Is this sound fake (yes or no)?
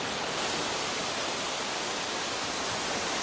no